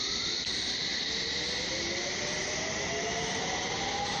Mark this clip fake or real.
real